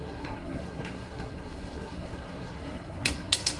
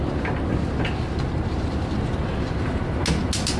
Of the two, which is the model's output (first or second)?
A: first